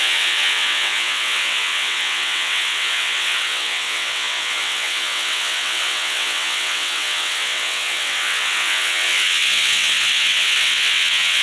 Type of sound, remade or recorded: remade